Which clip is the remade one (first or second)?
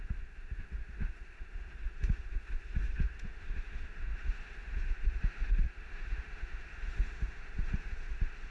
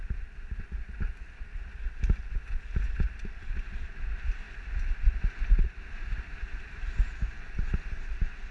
first